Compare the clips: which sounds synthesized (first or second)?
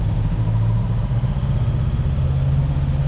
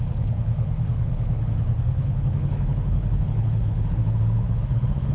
second